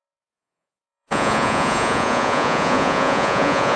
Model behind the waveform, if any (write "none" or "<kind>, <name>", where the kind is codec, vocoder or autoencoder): vocoder, Vocos